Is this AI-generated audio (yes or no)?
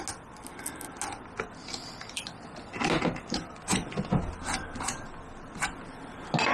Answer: no